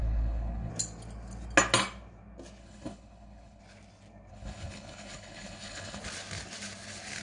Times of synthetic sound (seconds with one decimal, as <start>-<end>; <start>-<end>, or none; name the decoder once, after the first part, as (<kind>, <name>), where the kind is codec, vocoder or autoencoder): 0.0-0.7 (codec, HILCodec); 2.6-3.6; 4.3-6.0